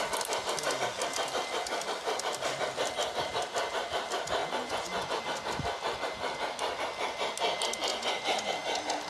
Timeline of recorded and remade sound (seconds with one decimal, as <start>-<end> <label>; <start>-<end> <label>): 0.0-4.4 recorded; 4.4-5.2 remade; 5.2-7.9 recorded; 7.9-8.5 remade; 8.5-9.1 recorded